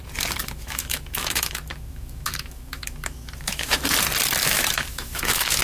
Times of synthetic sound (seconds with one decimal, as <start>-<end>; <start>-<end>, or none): 0.4-3.8; 4.4-5.6